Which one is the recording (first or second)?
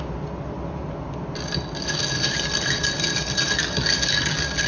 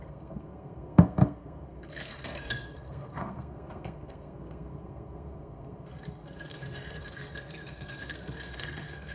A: first